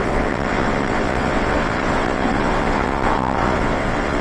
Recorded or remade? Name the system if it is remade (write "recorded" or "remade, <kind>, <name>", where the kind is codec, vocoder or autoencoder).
remade, vocoder, WaveNeXt